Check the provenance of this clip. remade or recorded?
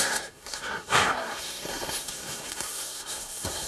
remade